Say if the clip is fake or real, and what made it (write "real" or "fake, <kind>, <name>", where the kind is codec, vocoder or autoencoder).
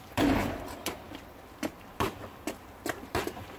fake, vocoder, BigVGAN v2